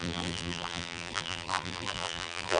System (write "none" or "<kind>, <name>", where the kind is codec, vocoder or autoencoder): vocoder, BigVGAN v2